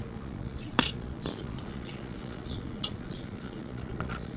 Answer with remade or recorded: remade